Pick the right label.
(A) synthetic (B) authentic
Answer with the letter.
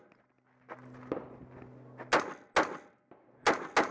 B